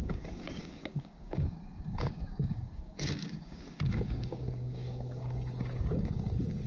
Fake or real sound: fake